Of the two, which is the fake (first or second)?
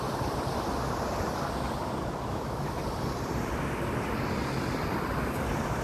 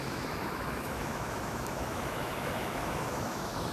second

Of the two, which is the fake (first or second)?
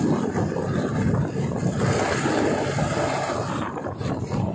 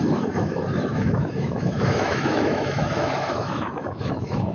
second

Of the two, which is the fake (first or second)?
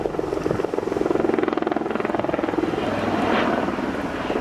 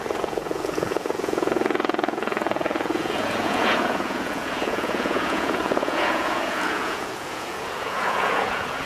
second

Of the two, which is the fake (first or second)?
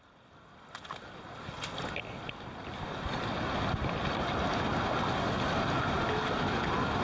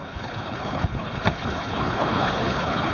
second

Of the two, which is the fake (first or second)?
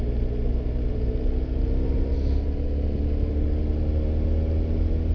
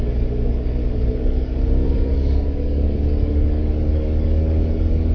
second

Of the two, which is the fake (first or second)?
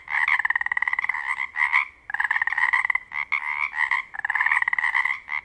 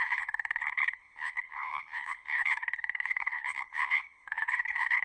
second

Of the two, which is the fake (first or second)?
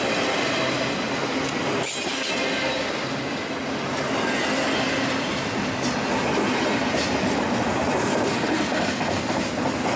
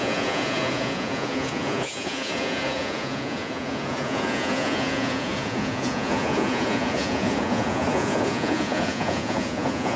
second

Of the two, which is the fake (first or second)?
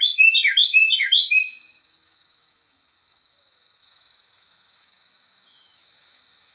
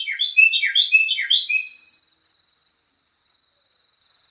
first